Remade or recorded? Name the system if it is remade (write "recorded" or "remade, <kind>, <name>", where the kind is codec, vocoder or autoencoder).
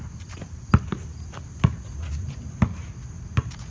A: recorded